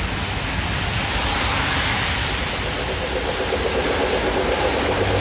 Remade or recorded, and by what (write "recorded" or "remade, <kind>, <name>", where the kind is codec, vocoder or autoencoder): recorded